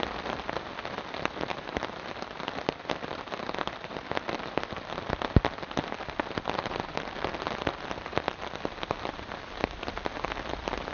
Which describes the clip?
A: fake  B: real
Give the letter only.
B